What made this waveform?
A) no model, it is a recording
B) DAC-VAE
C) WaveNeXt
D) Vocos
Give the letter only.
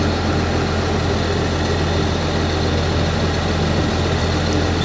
A